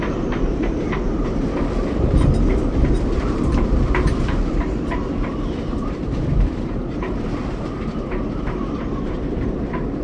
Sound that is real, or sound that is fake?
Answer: fake